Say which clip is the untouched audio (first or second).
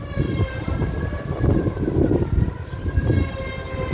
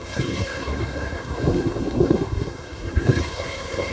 first